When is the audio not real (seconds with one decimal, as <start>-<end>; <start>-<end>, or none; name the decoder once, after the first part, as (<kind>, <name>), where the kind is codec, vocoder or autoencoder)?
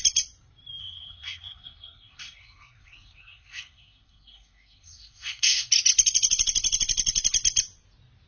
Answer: 0.8-5.7 (codec, SNAC)